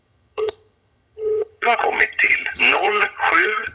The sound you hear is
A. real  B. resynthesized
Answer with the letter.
B